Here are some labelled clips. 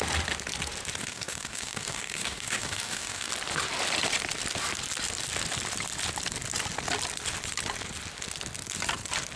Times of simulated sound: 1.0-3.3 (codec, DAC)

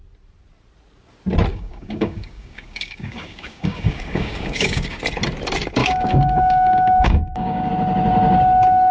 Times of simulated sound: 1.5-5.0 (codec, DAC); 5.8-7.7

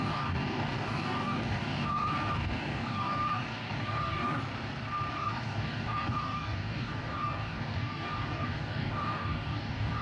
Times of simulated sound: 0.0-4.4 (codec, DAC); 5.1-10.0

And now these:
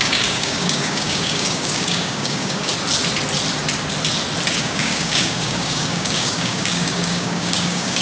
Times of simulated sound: 0.0-2.7 (codec, DAC); 4.5-8.0

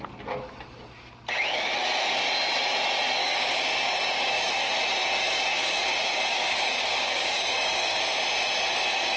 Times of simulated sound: 3.2-4.7 (codec, DAC); 5.2-8.0